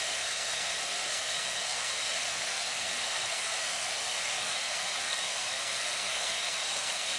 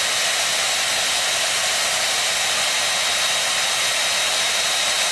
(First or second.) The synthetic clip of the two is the first